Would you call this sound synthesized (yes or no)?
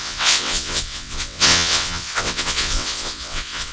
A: yes